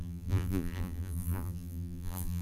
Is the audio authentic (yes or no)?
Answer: no